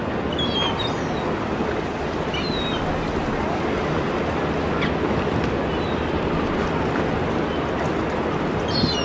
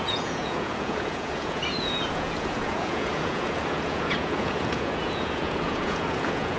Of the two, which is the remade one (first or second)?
second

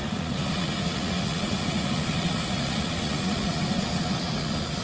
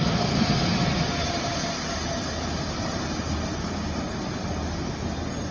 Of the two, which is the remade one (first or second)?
first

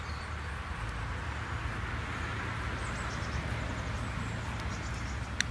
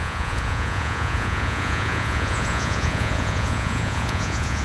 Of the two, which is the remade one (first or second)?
second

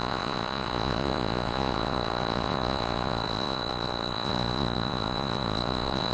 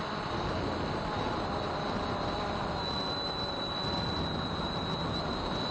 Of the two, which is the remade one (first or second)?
first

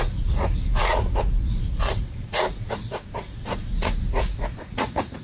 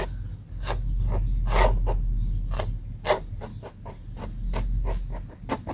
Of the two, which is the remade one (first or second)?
first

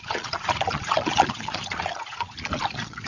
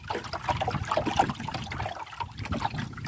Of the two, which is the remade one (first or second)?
first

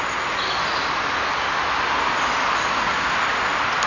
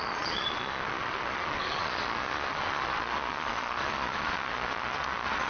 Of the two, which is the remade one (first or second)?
second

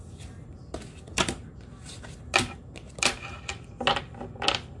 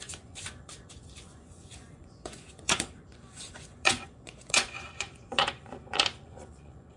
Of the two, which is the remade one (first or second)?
second